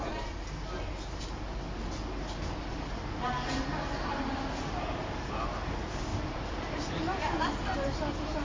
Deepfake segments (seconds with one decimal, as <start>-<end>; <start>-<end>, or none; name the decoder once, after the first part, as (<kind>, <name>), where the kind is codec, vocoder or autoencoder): 4.1-5.3 (vocoder, BigVGAN v2)